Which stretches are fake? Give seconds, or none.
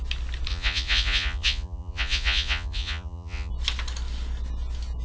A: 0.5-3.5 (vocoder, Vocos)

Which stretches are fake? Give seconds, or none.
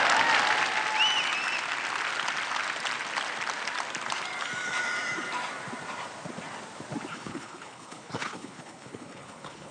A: 7.1-9.7 (codec, HILCodec)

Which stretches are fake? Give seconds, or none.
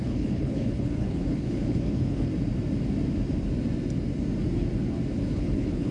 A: 0.0-2.3 (codec, HILCodec); 5.2-5.9